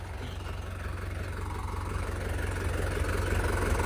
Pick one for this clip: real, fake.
real